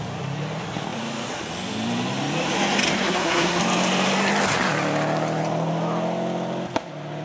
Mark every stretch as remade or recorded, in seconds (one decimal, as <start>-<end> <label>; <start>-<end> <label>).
0.0-3.0 recorded; 3.0-3.6 remade; 3.6-7.2 recorded